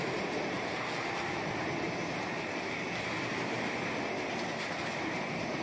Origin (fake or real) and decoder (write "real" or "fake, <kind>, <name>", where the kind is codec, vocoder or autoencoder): fake, vocoder, BigVGAN v2